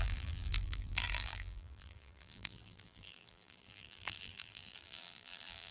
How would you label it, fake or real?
fake